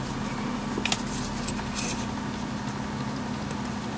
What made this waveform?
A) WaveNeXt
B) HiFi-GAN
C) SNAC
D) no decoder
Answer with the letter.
D